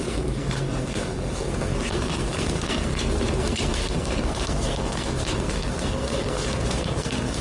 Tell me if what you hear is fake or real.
fake